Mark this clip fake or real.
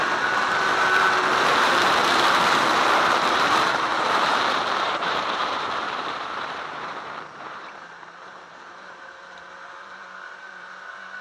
fake